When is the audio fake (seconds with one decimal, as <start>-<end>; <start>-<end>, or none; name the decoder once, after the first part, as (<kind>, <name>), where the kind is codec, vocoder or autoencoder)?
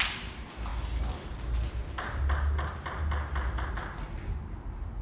none